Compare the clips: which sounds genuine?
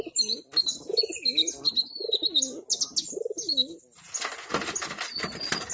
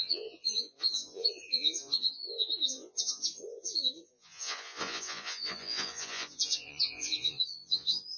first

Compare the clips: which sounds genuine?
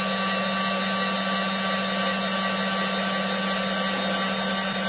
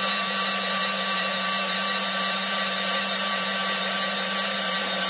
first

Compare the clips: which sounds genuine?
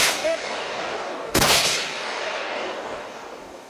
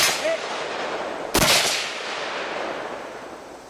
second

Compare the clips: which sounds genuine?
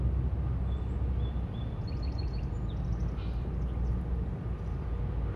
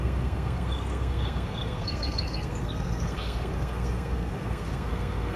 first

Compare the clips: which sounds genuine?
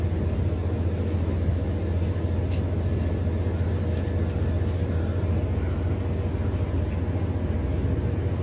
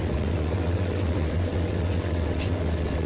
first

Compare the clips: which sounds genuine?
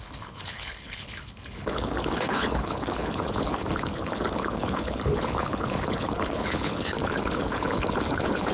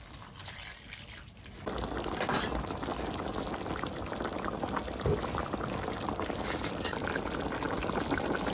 second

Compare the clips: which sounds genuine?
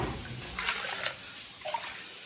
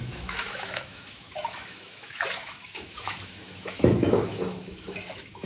first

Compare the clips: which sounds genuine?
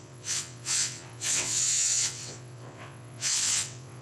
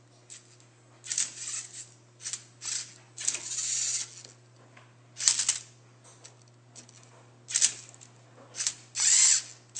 second